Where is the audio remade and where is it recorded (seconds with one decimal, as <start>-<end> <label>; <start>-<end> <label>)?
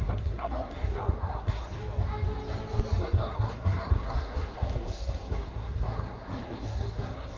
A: 0.0-1.8 remade; 1.8-3.0 recorded; 3.0-7.4 remade